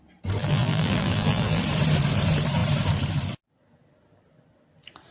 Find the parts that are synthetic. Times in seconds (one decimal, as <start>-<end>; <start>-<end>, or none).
0.4-1.6

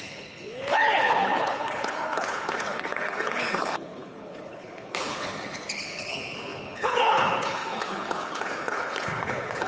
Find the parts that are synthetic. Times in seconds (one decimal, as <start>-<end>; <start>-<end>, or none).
0.0-9.7

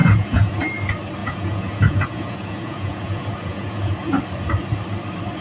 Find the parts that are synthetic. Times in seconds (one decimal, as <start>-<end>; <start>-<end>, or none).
0.0-0.6; 1.2-4.2

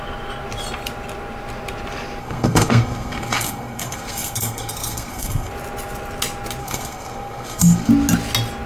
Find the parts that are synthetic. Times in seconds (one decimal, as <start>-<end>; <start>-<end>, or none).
2.2-5.5; 6.6-7.9